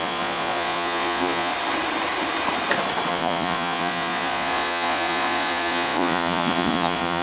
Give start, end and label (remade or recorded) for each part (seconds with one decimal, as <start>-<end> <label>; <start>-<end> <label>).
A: 0.0-1.5 remade; 1.5-3.1 recorded; 3.1-7.2 remade